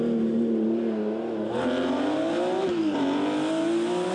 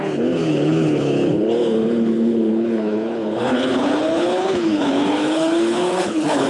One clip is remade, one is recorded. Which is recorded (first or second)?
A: first